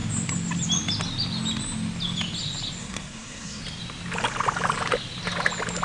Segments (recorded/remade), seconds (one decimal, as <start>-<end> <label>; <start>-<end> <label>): 0.0-2.8 recorded; 2.8-3.6 remade; 3.6-5.8 recorded